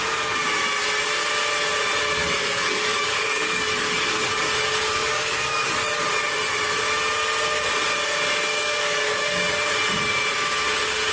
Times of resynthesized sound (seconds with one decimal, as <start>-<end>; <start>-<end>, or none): 2.2-4.3; 5.0-6.0; 8.5-9.5